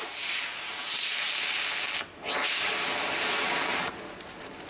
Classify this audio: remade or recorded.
recorded